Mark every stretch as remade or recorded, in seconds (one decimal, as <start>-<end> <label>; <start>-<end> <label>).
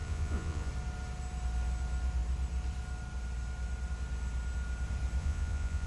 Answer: 0.0-0.7 remade; 0.7-5.2 recorded; 5.2-5.9 remade